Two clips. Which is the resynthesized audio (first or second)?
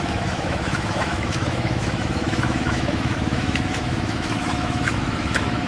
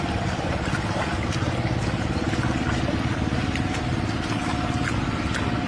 first